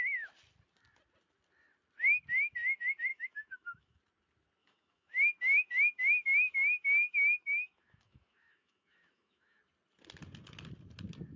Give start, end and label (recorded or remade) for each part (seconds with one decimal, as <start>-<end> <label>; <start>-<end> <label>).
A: 0.0-3.1 recorded; 3.1-4.0 remade; 4.0-4.6 recorded; 4.6-9.6 remade; 9.6-11.4 recorded